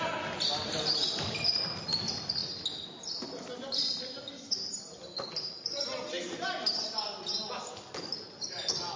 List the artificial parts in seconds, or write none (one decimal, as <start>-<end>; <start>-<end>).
none